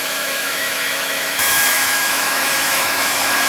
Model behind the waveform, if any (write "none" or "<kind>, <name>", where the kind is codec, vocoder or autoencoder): autoencoder, DAC-VAE